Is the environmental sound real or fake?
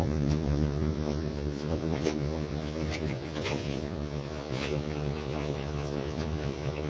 fake